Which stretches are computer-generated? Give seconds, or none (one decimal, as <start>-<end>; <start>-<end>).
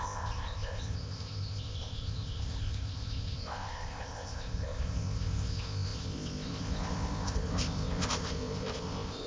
0.0-9.3